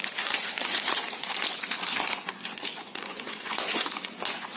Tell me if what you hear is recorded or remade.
remade